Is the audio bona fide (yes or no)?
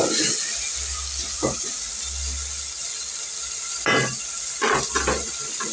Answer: yes